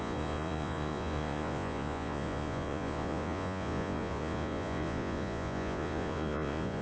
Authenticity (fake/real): fake